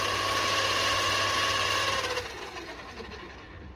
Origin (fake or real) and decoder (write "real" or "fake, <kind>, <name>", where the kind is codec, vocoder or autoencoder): real